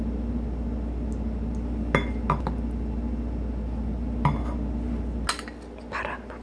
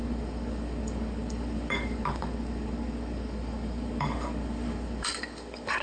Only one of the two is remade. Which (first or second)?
second